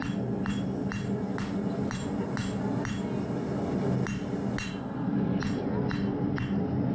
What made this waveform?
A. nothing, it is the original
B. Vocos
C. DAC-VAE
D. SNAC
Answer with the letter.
A